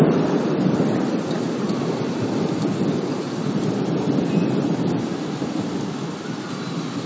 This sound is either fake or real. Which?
fake